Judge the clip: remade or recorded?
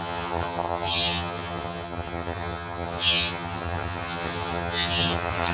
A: remade